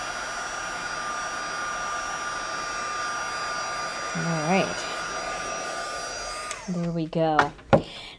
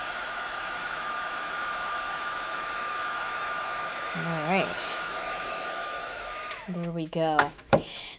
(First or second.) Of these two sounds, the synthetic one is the second